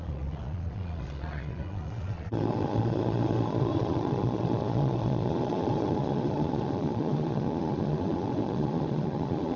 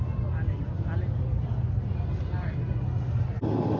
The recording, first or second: second